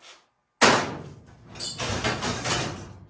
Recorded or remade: recorded